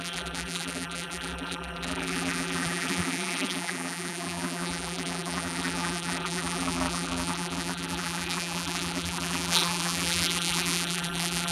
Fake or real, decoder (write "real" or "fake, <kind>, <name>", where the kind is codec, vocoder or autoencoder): fake, vocoder, BigVGAN v2